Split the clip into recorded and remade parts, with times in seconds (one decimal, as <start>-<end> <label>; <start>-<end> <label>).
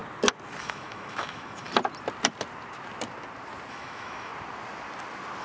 0.0-0.6 recorded; 0.6-1.7 remade; 1.7-3.7 recorded; 3.7-4.3 remade; 4.3-5.4 recorded